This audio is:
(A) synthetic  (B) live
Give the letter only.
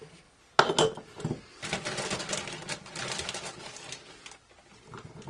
B